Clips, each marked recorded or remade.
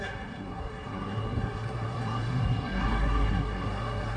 remade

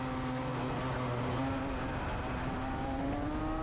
recorded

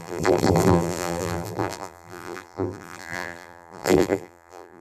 remade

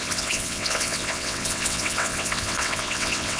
remade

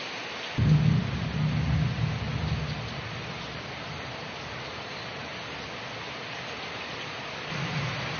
recorded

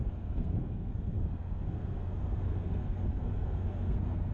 remade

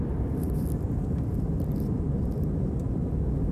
recorded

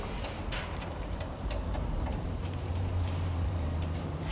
remade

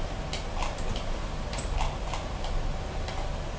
recorded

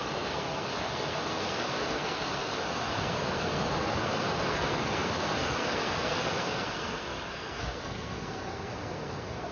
remade